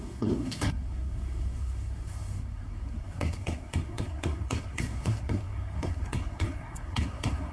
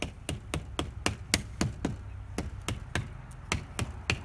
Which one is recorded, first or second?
second